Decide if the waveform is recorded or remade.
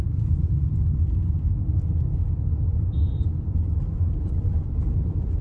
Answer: remade